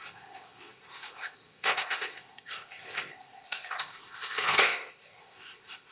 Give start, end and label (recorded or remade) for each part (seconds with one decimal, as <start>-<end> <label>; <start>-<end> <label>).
0.0-5.9 remade